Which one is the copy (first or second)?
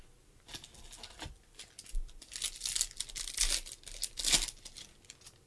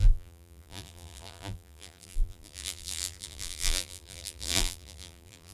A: second